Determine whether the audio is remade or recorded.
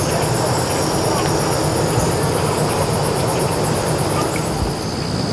recorded